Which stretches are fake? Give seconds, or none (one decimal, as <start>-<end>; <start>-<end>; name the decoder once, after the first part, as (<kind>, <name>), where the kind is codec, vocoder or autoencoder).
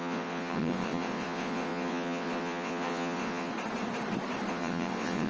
0.0-3.5 (vocoder, WaveNeXt); 4.5-5.3